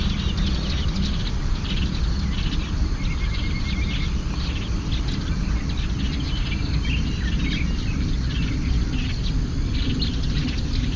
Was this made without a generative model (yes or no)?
yes